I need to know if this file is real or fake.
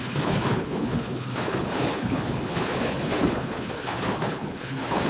fake